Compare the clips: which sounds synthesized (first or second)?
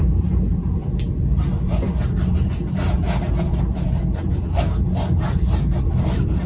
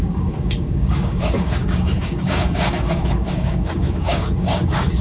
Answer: second